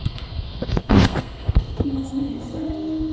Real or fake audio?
fake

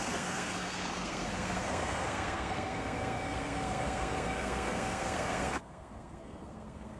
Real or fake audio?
fake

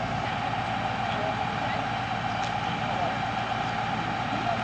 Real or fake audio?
real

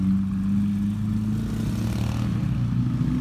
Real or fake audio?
real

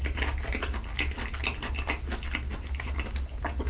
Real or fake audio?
real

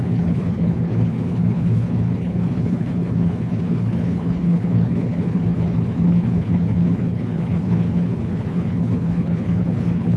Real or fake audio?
fake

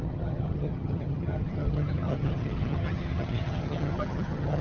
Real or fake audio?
fake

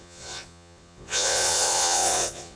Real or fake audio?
fake